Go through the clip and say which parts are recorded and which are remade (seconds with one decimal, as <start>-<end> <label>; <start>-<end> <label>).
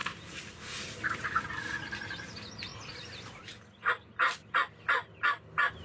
0.0-5.8 recorded